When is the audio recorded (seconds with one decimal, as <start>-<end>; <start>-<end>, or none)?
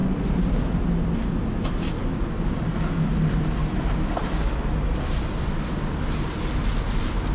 0.8-7.3